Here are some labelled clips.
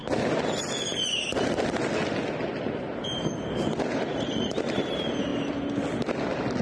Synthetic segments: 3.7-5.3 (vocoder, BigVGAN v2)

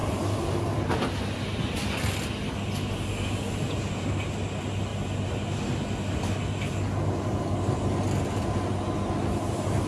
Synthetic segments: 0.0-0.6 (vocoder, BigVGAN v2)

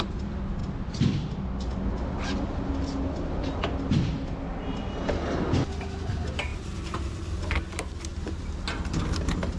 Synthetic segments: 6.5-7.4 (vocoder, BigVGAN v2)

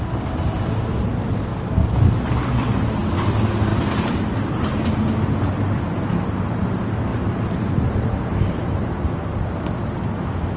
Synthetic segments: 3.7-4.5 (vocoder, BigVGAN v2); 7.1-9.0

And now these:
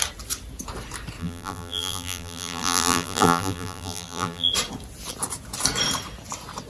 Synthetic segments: 1.2-4.5 (vocoder, BigVGAN v2)